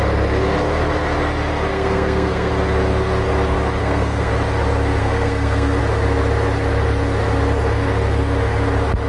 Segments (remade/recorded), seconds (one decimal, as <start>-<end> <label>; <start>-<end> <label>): 0.0-1.7 recorded; 1.7-2.5 remade; 2.5-3.8 recorded; 3.8-4.3 remade; 4.3-5.0 recorded; 5.0-5.8 remade; 5.8-9.1 recorded